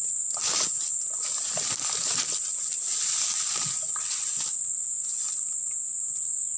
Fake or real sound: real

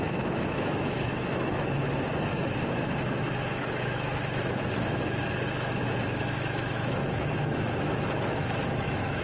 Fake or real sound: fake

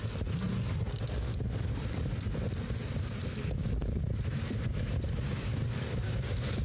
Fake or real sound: real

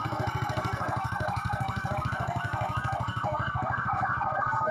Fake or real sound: fake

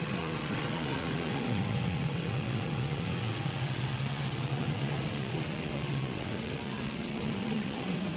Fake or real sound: fake